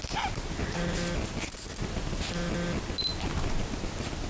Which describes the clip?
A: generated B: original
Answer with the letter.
B